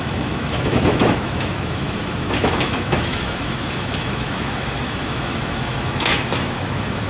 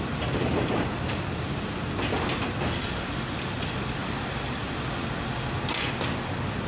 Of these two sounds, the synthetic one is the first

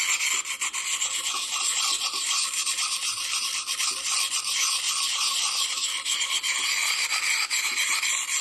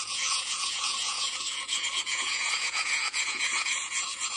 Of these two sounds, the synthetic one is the second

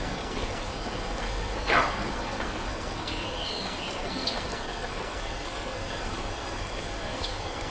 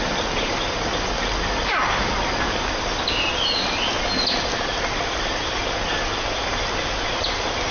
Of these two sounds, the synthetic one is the first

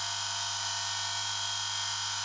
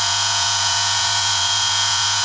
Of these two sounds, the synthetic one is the second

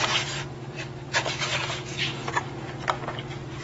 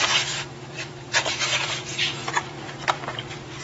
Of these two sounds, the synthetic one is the second